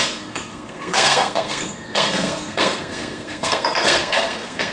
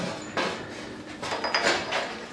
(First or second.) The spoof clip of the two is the first